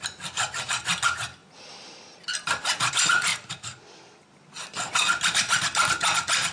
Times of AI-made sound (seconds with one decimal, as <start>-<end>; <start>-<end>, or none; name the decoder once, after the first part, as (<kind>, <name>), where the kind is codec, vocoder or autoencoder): none

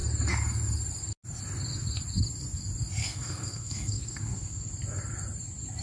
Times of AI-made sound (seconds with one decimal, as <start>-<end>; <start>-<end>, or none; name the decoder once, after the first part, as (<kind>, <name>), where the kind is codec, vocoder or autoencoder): 3.0-4.7 (codec, SNAC)

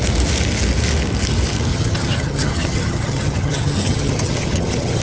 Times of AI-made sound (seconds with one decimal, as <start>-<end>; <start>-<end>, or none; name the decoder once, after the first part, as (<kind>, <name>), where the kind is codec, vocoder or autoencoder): 1.7-5.0 (vocoder, HiFi-GAN)

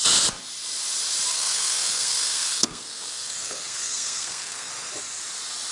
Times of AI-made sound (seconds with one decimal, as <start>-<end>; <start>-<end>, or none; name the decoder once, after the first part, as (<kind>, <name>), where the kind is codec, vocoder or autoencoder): 1.3-4.7 (codec, SNAC)

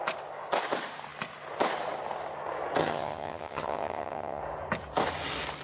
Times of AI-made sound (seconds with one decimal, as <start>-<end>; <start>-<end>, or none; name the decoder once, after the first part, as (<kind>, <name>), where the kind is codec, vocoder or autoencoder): 2.8-4.4 (vocoder, HiFi-GAN)

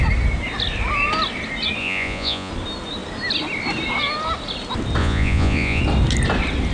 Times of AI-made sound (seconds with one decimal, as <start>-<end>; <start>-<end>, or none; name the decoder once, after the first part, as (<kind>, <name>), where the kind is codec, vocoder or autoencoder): 1.8-2.5 (vocoder, Vocos); 5.0-5.8